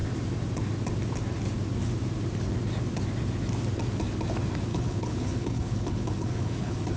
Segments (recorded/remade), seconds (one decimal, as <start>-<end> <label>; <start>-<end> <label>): 0.0-4.7 recorded; 4.7-7.0 remade